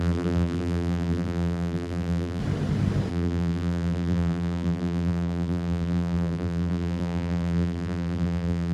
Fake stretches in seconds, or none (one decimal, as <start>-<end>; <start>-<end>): 0.0-2.4; 3.1-8.7